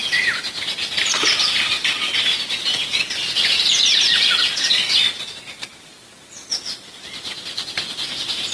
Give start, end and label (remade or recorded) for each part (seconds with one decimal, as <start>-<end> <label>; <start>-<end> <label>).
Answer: 0.0-8.5 recorded

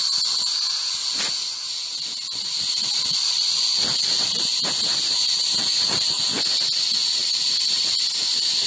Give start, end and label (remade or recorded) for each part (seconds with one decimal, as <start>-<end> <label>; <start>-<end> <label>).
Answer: 0.0-1.9 recorded; 1.9-5.5 remade; 5.5-7.0 recorded; 7.0-8.0 remade; 8.0-8.7 recorded

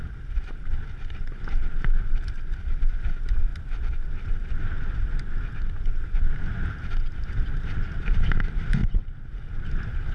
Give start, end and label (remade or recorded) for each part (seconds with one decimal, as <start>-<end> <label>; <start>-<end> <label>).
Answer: 0.0-10.1 recorded

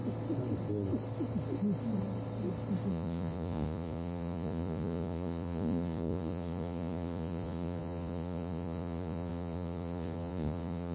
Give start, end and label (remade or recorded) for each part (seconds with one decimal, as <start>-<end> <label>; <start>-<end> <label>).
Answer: 0.0-2.9 recorded; 2.9-10.9 remade

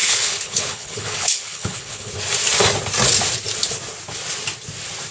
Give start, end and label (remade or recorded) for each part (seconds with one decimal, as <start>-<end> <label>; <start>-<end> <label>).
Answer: 0.0-2.1 remade; 2.1-5.1 recorded